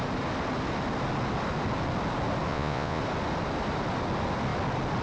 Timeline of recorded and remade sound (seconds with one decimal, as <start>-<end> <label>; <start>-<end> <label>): 0.0-2.5 recorded; 2.5-3.0 remade; 3.0-5.0 recorded